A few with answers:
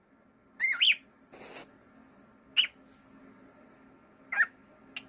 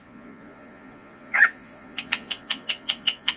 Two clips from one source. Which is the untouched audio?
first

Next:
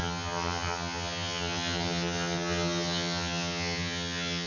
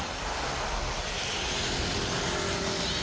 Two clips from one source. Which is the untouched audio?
second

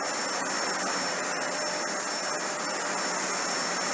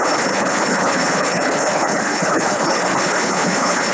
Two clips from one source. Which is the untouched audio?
first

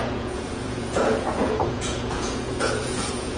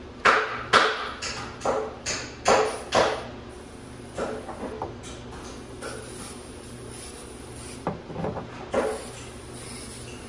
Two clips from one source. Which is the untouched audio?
second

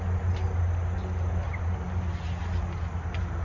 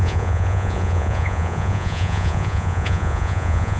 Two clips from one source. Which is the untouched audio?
first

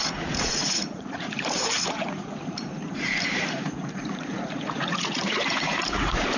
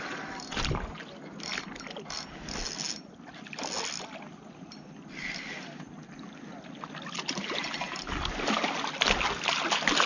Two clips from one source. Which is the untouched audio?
second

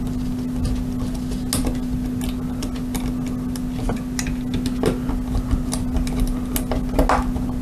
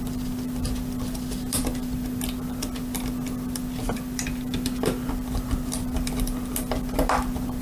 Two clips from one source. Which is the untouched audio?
first